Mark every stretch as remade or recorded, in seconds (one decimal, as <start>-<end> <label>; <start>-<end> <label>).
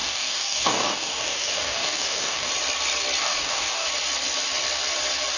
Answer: 0.0-2.5 remade; 2.5-3.2 recorded; 3.2-3.9 remade; 3.9-5.4 recorded